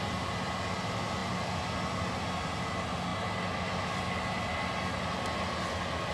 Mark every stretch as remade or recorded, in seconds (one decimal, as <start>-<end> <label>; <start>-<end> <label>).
0.0-6.1 recorded